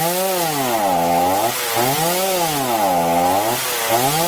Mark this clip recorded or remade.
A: recorded